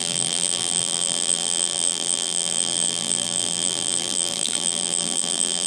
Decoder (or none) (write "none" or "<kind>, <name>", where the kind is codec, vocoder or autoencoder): vocoder, BigVGAN v2